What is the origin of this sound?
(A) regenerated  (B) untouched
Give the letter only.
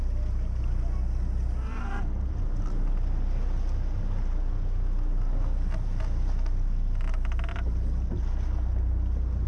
B